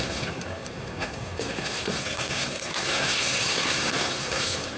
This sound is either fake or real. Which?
fake